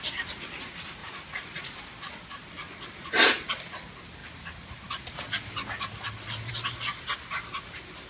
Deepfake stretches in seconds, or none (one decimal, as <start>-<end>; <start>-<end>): 1.0-1.8